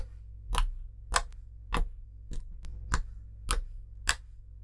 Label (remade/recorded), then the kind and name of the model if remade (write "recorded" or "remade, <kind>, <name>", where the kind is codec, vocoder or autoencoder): recorded